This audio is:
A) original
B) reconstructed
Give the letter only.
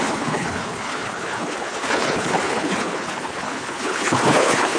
B